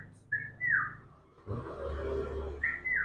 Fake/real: real